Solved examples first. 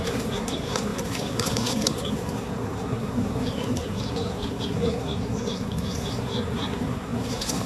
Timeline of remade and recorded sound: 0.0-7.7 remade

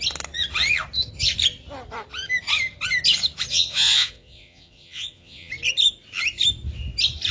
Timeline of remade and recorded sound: 0.0-3.5 recorded; 3.5-5.5 remade; 5.5-7.3 recorded

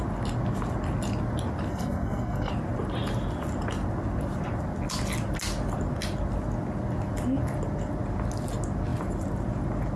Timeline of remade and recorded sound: 0.0-1.7 recorded; 1.7-2.5 remade; 2.5-10.0 recorded

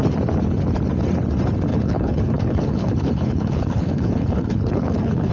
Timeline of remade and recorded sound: 0.0-1.7 recorded; 1.7-5.3 remade

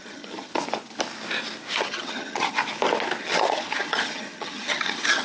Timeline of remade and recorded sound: 0.0-0.5 remade; 0.5-1.8 recorded; 1.8-2.6 remade; 2.6-3.2 recorded; 3.2-5.2 remade

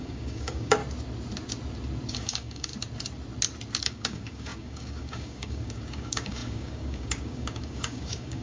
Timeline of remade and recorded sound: 0.0-0.8 remade; 0.8-2.1 recorded; 2.1-2.7 remade; 2.7-3.8 recorded; 3.8-8.4 remade